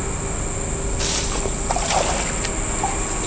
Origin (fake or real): real